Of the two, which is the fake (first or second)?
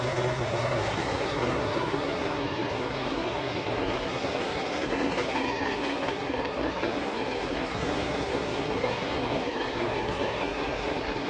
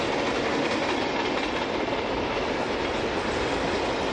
first